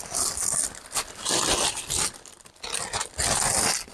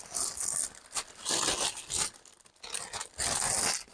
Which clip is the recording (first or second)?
second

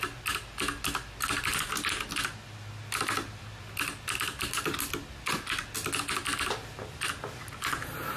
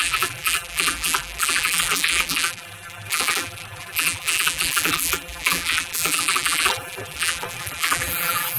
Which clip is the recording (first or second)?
first